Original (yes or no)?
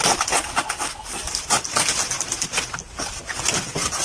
yes